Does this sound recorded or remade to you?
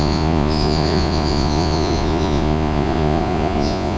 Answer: remade